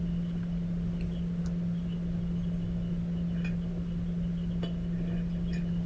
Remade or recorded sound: recorded